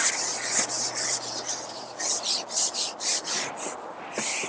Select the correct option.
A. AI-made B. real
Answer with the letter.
B